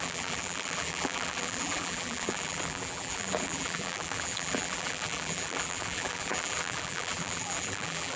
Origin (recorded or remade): remade